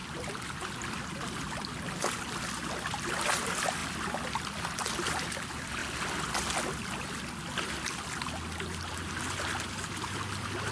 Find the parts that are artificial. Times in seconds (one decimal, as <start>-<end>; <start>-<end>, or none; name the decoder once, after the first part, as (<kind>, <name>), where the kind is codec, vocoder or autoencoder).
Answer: none